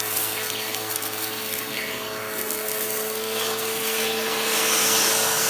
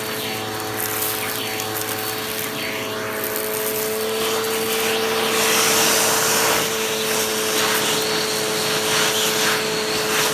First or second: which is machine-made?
first